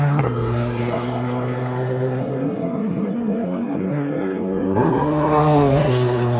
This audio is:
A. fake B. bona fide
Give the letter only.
A